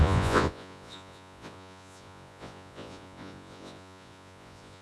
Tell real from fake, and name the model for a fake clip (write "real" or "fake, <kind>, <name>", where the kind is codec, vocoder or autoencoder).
fake, vocoder, Vocos